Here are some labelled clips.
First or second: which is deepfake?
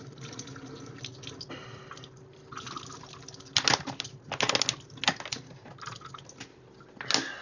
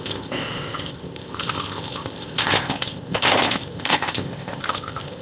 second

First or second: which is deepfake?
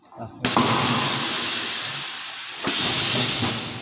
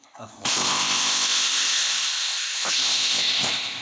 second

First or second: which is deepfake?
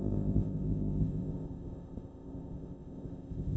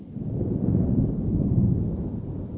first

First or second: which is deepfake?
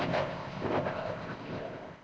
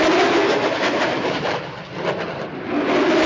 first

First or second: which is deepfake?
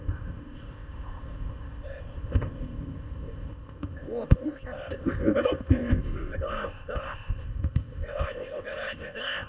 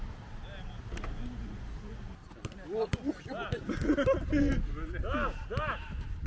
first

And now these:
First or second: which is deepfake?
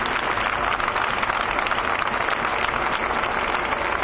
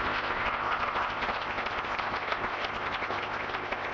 second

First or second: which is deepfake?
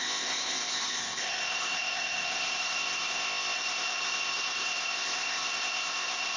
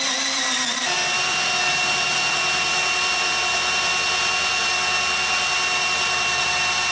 first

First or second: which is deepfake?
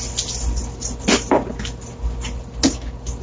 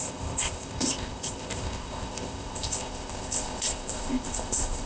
second